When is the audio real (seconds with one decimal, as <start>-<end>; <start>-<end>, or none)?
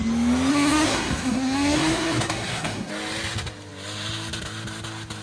0.0-0.5; 2.9-5.2